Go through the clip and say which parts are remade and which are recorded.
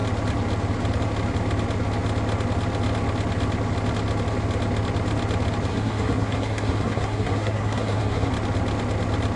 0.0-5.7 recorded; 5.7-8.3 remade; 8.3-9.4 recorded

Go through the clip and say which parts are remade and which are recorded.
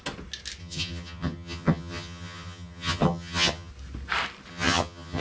0.0-0.6 recorded; 0.6-3.7 remade; 3.7-4.5 recorded; 4.5-5.2 remade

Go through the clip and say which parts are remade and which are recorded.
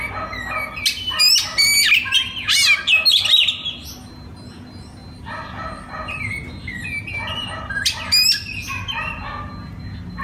0.0-10.2 recorded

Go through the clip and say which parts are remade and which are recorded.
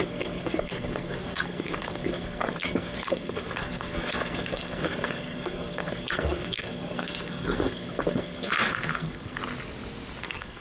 0.0-9.4 remade; 9.4-10.2 recorded; 10.2-10.6 remade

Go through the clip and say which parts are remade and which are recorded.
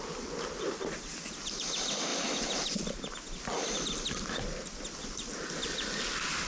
0.0-6.5 recorded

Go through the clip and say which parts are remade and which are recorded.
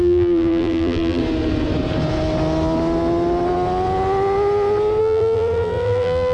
0.0-1.2 remade; 1.2-5.0 recorded; 5.0-6.3 remade